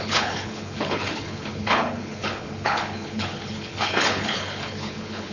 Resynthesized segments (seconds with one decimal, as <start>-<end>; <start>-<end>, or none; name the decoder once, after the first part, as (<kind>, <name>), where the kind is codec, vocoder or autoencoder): 0.0-5.3 (codec, HILCodec)